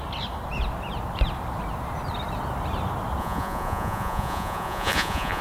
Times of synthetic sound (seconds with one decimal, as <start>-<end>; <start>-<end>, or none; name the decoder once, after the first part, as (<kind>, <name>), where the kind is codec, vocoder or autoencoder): 3.2-5.4 (vocoder, Vocos)